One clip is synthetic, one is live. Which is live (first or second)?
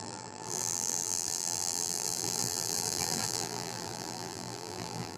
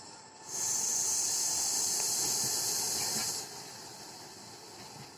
second